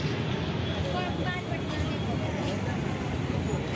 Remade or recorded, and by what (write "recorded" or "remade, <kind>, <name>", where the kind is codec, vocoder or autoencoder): recorded